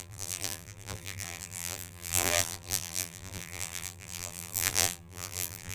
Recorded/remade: remade